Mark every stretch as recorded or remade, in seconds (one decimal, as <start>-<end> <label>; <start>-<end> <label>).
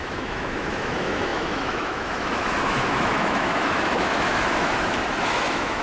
0.0-5.8 remade